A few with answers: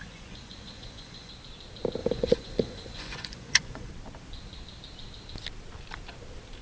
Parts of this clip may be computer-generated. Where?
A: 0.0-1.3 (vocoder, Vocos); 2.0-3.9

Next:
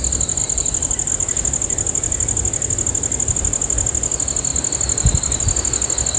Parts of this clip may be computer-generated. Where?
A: 0.4-1.1 (vocoder, BigVGAN v2)

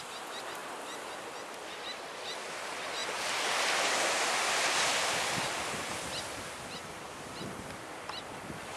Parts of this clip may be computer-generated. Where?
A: 0.0-0.6 (vocoder, BigVGAN v2); 2.4-8.8

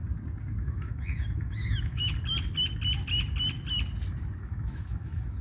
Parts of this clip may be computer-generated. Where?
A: 0.6-2.1 (autoencoder, DAC-VAE); 4.4-5.4

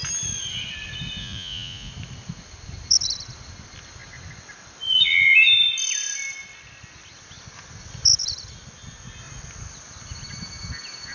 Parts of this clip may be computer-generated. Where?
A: 1.2-1.9 (vocoder, Vocos)

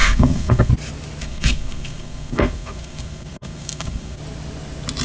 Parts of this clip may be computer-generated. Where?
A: 0.0-0.7 (codec, SNAC); 1.2-4.2